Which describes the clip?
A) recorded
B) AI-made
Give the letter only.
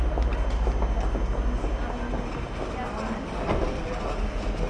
A